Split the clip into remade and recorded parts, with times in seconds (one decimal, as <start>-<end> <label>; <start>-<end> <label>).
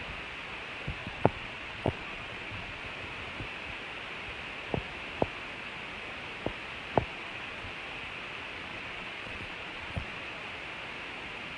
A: 0.0-1.0 recorded; 1.0-2.8 remade; 2.8-7.1 recorded; 7.1-7.7 remade; 7.7-8.7 recorded; 8.7-10.5 remade; 10.5-11.6 recorded